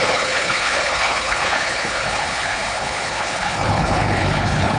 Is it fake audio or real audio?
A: fake